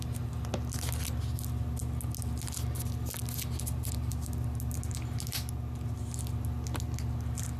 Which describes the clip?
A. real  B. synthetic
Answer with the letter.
A